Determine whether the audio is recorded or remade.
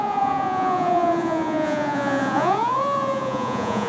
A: remade